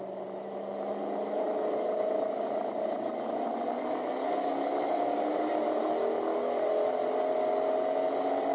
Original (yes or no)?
yes